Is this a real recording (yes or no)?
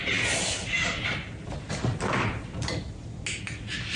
yes